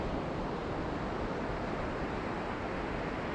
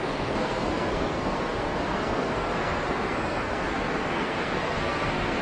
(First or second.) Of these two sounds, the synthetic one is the second